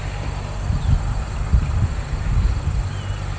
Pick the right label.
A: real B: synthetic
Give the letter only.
A